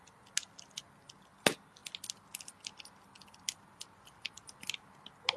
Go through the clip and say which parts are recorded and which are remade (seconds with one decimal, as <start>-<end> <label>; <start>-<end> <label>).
0.0-5.4 recorded